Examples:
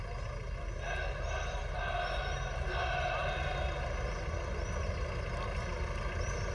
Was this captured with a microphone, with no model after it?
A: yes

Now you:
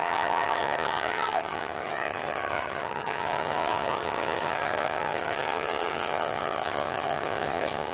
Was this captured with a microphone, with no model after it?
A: no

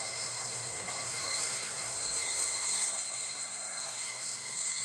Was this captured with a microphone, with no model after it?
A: no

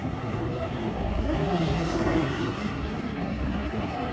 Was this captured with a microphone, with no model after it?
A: no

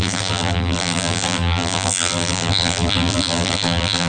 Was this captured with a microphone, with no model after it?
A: no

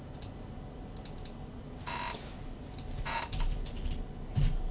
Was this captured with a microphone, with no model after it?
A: yes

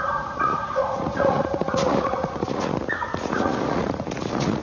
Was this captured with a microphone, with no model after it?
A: no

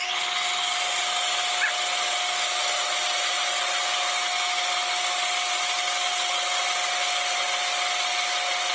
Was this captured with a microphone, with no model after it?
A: yes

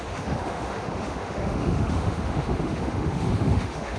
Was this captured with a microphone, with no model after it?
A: no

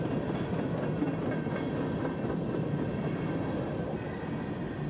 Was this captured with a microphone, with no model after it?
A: yes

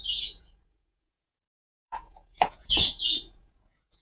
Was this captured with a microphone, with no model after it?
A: no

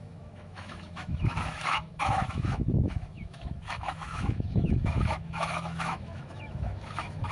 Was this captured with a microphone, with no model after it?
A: no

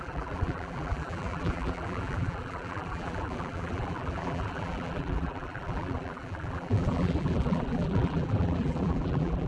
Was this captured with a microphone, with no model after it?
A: no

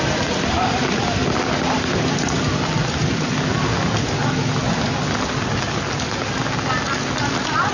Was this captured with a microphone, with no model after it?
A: yes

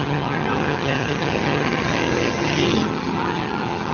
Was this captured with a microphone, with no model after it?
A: no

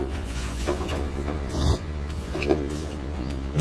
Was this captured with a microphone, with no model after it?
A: no